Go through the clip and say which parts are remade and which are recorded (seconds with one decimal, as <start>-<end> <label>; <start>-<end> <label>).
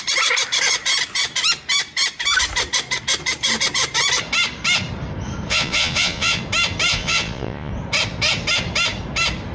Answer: 0.0-5.5 recorded; 5.5-6.4 remade; 6.4-6.9 recorded; 6.9-7.7 remade; 7.7-9.5 recorded